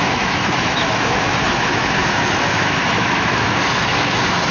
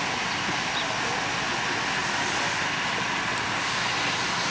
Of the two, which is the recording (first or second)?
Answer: second